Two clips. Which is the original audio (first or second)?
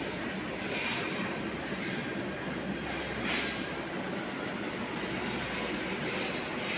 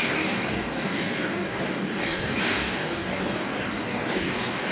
first